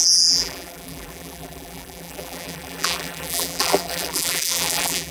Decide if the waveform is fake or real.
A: fake